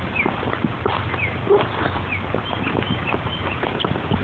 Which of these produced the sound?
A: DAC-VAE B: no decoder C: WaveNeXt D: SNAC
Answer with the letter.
B